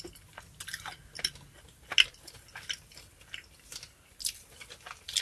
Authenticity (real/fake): real